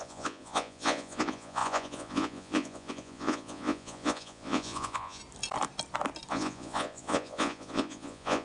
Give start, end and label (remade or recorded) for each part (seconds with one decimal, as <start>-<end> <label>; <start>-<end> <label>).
0.0-5.2 remade; 5.2-6.3 recorded; 6.3-8.4 remade